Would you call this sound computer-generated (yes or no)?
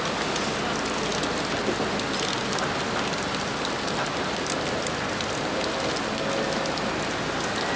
no